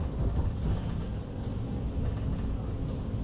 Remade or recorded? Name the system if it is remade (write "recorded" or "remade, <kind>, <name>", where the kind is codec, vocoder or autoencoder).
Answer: recorded